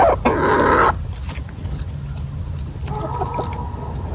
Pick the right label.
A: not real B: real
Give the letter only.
B